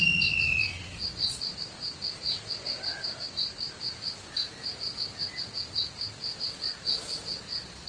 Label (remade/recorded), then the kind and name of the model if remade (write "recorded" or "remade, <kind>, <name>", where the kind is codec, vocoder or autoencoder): recorded